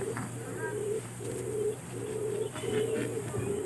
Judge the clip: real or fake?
fake